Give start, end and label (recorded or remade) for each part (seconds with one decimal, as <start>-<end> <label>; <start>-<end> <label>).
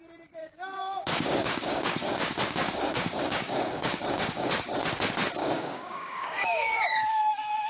0.0-0.4 recorded; 0.4-4.5 remade; 4.5-5.4 recorded; 5.4-7.7 remade